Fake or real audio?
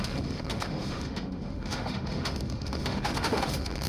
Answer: fake